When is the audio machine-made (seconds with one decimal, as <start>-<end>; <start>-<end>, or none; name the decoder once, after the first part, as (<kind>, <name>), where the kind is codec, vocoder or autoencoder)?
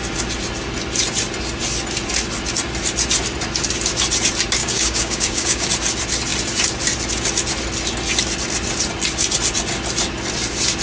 4.6-5.7 (codec, DAC)